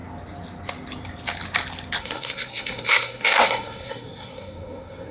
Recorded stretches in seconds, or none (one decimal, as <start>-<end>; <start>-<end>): 0.0-2.0